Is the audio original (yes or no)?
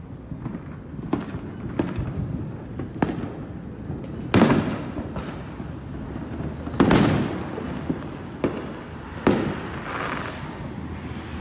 yes